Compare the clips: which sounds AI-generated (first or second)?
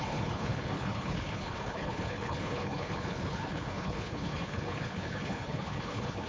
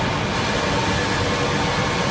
first